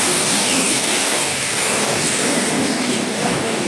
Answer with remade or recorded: remade